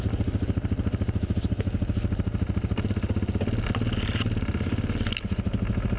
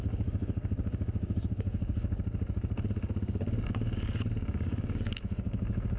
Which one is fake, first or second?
second